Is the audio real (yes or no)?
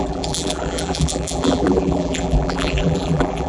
no